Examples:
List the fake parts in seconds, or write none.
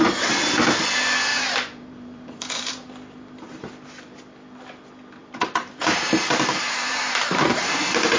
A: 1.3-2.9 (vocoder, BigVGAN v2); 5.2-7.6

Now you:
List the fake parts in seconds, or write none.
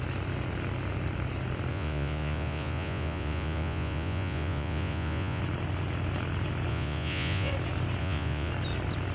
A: 1.7-5.4 (vocoder, Vocos); 6.7-7.5; 8.0-8.5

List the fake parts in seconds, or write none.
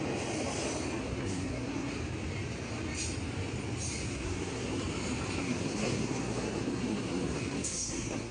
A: 1.0-1.9 (codec, SNAC); 4.1-4.8; 5.4-8.3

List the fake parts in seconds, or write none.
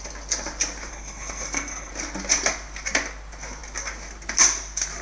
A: 0.9-1.9 (codec, SNAC)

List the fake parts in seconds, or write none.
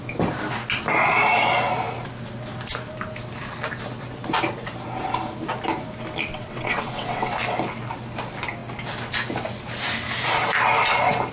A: 6.3-7.3 (vocoder, WaveNeXt)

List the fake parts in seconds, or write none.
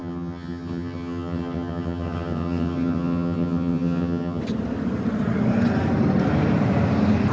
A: 0.0-4.4 (vocoder, HiFi-GAN)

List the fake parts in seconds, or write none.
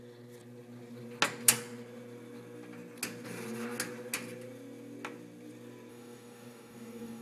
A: 5.9-7.2 (codec, DAC)